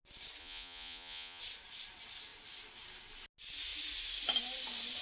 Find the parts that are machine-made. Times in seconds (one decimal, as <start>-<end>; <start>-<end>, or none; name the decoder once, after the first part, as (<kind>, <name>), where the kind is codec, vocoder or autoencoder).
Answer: 0.4-1.4 (vocoder, Vocos)